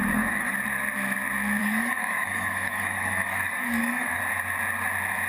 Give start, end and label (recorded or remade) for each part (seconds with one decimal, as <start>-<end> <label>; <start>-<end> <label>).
0.0-0.5 remade; 0.5-1.6 recorded; 1.6-4.2 remade; 4.2-5.3 recorded